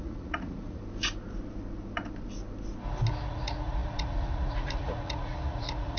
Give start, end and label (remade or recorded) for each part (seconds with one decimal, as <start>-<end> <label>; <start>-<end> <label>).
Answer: 0.0-0.8 remade; 0.8-3.3 recorded; 3.3-6.0 remade